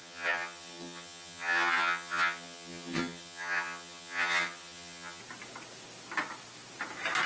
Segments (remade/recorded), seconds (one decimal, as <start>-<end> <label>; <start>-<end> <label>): 0.0-5.2 remade; 5.2-7.3 recorded